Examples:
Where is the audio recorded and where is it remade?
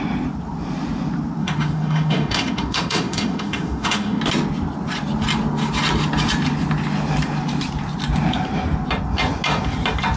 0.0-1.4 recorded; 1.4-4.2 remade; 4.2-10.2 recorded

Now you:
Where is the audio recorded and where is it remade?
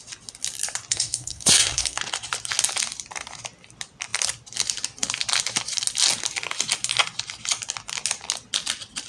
0.0-0.9 recorded; 0.9-2.0 remade; 2.0-9.1 recorded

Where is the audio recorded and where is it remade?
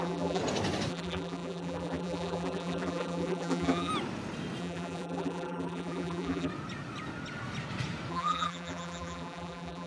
0.0-0.4 remade; 0.4-0.9 recorded; 0.9-3.9 remade; 3.9-4.6 recorded; 4.6-6.5 remade; 6.5-8.1 recorded; 8.1-9.9 remade